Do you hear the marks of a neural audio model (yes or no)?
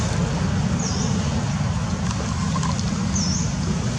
no